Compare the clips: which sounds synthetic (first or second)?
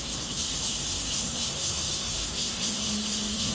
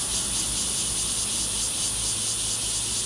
first